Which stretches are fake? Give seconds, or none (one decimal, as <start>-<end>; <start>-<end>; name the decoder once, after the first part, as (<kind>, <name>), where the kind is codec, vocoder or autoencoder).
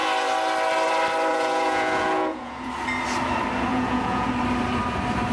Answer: 1.3-2.7 (vocoder, Vocos); 3.7-4.3